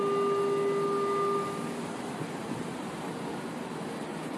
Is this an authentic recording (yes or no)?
yes